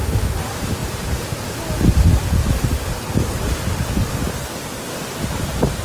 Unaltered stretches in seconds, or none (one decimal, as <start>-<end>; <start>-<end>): 0.0-5.8